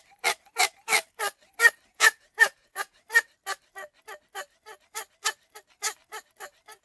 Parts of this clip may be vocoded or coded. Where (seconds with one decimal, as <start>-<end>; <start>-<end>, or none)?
1.9-3.0